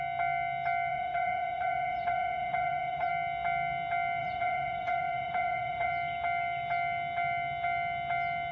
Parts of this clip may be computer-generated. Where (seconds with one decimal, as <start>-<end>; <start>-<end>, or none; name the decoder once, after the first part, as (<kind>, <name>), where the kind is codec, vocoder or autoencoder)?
0.9-3.1 (vocoder, Vocos); 4.2-5.9

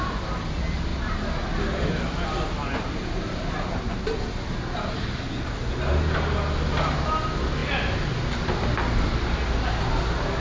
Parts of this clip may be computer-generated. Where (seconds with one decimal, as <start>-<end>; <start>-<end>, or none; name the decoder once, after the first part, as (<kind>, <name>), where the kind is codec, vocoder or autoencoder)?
none

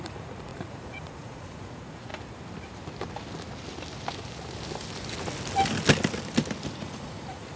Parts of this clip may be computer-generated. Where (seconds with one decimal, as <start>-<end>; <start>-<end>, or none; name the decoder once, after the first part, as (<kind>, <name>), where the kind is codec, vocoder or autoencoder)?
0.0-2.1 (vocoder, Vocos); 6.7-7.6

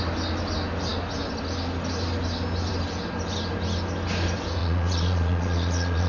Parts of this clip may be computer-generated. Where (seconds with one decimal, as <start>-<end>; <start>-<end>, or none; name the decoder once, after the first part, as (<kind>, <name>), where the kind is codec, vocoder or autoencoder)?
4.6-6.1 (vocoder, Vocos)